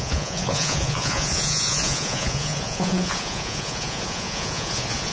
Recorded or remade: remade